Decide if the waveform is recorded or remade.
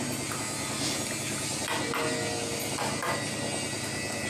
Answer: recorded